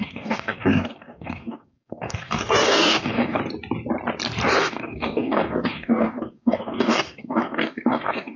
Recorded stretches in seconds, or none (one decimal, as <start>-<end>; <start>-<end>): 3.4-4.6